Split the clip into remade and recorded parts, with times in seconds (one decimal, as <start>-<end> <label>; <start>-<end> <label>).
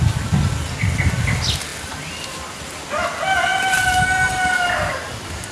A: 0.0-5.5 recorded